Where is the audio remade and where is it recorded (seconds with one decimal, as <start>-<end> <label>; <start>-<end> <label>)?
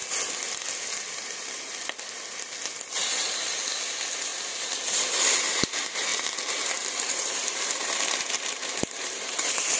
0.0-2.9 recorded; 2.9-4.3 remade; 4.3-5.4 recorded; 5.4-9.8 remade